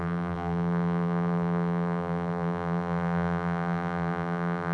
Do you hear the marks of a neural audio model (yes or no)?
yes